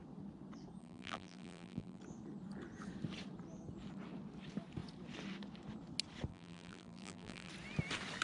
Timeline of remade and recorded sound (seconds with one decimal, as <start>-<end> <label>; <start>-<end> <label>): 0.0-0.8 recorded; 0.8-2.0 remade; 2.0-6.3 recorded; 6.3-7.5 remade; 7.5-8.2 recorded